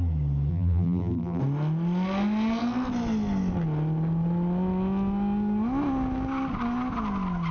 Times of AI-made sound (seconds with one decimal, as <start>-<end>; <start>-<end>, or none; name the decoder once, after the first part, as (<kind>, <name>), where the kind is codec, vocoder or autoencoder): 0.5-1.4 (vocoder, BigVGAN v2)